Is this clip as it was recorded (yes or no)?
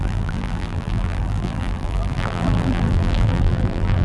no